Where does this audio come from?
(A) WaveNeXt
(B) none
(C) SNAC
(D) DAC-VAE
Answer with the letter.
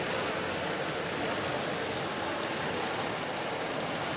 B